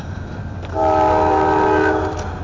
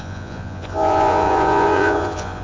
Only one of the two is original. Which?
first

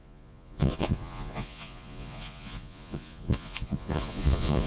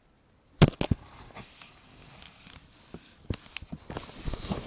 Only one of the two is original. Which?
second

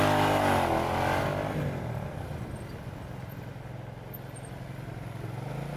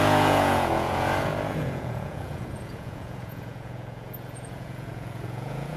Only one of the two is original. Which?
first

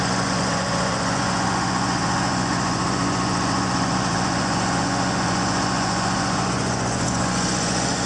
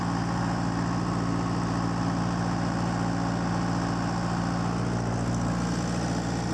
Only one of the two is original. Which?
second